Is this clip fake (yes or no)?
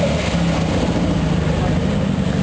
no